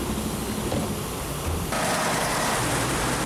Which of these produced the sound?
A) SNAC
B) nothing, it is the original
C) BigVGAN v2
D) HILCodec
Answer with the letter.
B